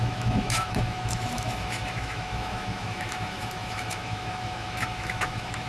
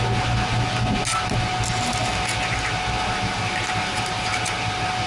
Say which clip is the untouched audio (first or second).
second